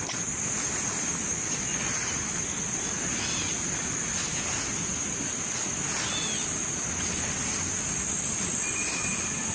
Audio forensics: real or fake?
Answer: real